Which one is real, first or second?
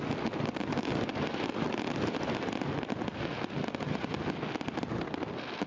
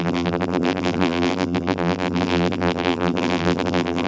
first